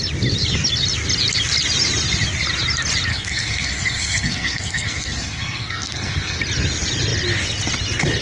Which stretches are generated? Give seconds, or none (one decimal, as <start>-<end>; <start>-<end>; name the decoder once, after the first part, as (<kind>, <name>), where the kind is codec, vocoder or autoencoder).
3.1-6.4 (codec, SNAC)